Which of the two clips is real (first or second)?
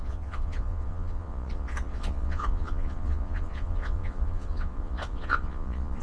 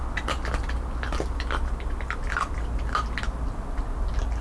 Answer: second